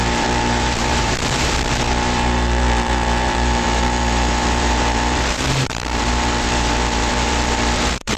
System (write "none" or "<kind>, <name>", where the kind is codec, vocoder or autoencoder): vocoder, BigVGAN v2